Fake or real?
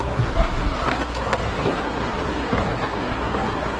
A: fake